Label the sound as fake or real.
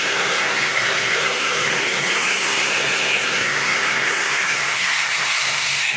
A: fake